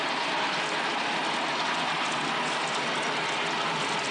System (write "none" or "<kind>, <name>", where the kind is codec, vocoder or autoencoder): none